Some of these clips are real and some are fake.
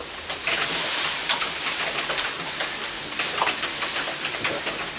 real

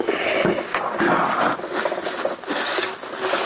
real